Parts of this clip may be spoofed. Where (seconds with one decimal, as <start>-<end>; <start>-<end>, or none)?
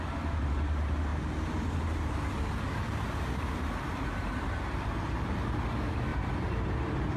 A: none